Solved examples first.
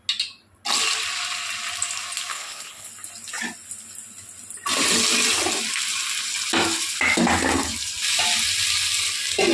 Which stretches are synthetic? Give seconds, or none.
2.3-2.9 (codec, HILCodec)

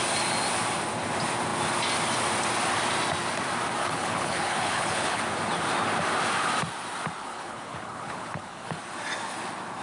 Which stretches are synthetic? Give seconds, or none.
3.8-5.2 (codec, HILCodec); 7.2-8.8

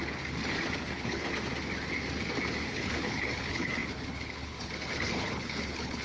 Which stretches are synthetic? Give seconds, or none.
0.8-1.3 (codec, HILCodec); 2.5-6.0

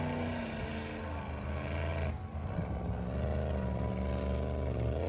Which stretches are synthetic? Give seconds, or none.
none

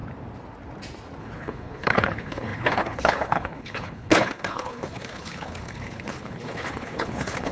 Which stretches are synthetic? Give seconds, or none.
1.2-7.5 (codec, HILCodec)

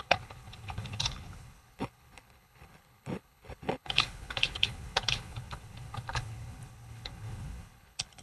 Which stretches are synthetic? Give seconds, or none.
0.0-8.2 (codec, HILCodec)

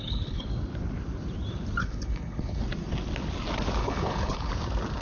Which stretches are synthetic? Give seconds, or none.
0.0-0.5 (codec, HILCodec); 1.8-2.6; 3.8-4.5

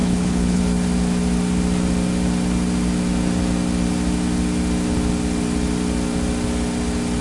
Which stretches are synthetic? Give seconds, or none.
0.0-0.6 (codec, HILCodec)